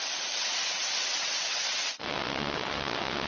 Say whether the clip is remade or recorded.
remade